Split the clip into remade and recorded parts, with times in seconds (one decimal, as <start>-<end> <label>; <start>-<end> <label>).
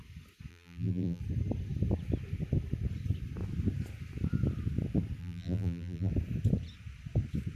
0.0-0.5 recorded; 0.5-1.2 remade; 1.2-5.2 recorded; 5.2-6.1 remade; 6.1-7.6 recorded